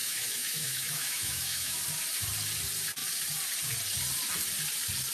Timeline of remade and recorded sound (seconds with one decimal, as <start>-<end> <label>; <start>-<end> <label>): 0.0-1.8 remade; 1.8-5.1 recorded